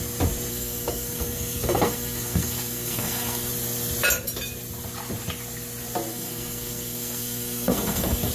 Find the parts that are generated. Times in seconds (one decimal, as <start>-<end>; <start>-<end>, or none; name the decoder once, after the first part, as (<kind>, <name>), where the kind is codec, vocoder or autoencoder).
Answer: 0.5-3.5 (codec, SNAC); 6.1-8.3